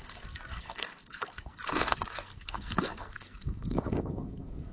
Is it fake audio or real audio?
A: fake